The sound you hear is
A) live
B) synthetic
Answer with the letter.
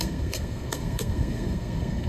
B